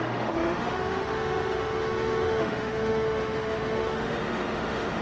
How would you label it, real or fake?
fake